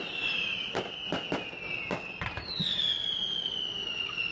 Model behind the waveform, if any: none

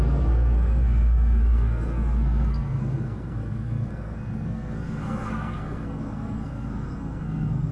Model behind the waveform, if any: codec, SNAC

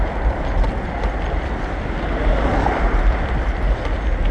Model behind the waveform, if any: none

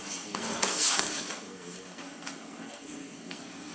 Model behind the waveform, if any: codec, SNAC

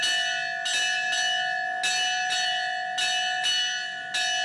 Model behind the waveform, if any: none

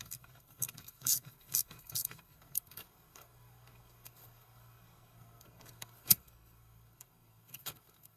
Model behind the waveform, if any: codec, SNAC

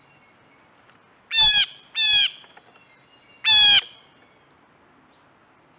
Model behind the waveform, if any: none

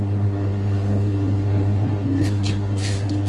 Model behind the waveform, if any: codec, SNAC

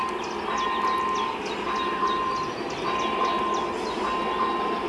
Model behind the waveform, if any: none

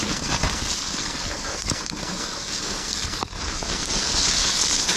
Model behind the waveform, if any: codec, SNAC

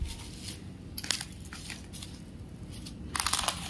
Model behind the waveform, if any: none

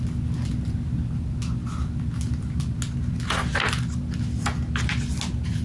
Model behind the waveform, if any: none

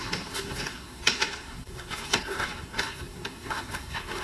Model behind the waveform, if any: codec, SNAC